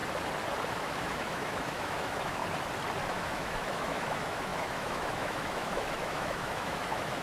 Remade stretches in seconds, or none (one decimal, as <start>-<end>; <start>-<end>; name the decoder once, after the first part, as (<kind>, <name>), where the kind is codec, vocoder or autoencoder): 0.7-2.4 (autoencoder, DAC-VAE); 3.1-7.2